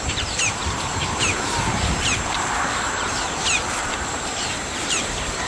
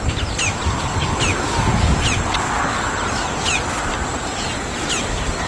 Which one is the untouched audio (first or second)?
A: second